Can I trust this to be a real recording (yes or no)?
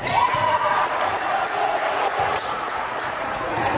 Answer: no